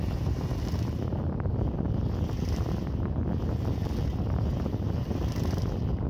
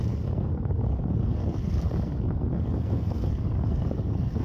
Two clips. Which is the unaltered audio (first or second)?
first